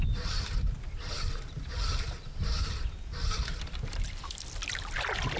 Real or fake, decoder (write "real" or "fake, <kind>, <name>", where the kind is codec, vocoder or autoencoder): real